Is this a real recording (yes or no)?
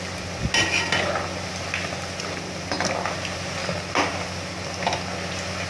yes